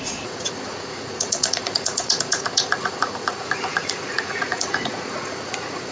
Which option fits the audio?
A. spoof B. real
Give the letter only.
A